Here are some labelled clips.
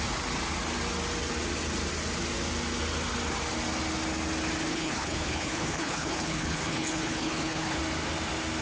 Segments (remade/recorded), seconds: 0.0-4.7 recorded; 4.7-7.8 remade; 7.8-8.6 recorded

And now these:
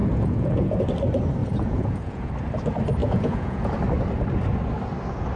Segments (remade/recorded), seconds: 0.0-0.8 remade; 0.8-1.4 recorded; 1.4-2.3 remade; 2.3-3.0 recorded; 3.0-3.7 remade; 3.7-5.4 recorded

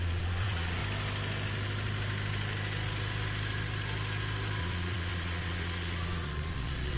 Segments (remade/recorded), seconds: 0.0-0.8 remade; 0.8-4.6 recorded; 4.6-7.0 remade